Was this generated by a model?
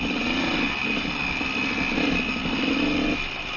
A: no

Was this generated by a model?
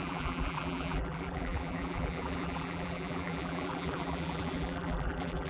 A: yes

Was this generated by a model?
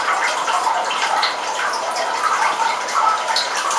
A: yes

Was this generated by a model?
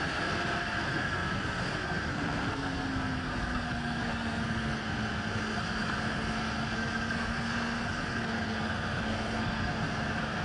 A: yes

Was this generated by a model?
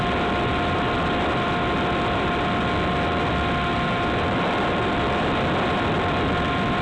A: yes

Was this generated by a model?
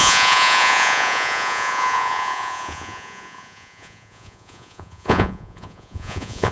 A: yes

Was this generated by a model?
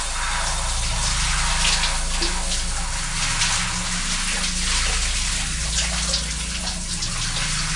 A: no